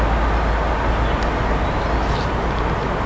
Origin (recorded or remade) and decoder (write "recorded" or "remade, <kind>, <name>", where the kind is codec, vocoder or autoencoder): recorded